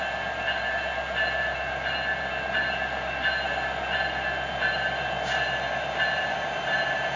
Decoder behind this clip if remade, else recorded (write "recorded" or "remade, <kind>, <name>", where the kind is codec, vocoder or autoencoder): recorded